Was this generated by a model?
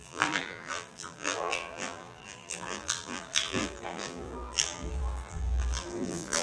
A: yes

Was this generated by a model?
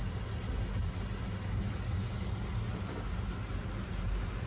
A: no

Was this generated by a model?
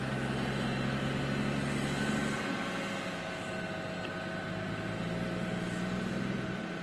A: no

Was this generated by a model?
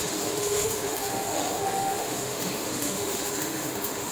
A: yes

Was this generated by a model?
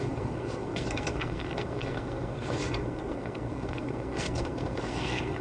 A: yes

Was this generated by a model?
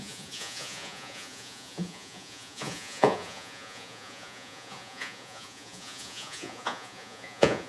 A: yes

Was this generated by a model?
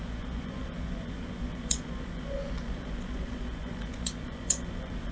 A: yes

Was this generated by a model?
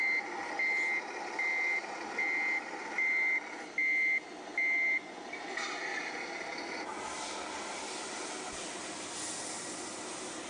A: no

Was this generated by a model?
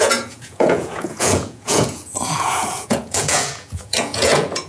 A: yes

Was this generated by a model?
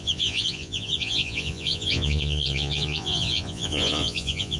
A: yes